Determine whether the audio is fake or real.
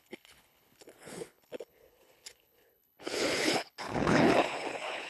fake